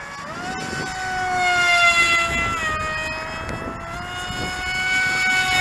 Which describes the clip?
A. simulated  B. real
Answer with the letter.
B